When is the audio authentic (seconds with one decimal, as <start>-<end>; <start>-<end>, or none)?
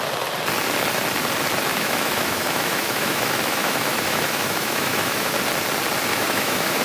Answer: 0.0-1.7; 5.3-6.1